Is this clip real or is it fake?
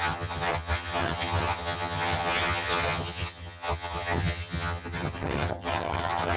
fake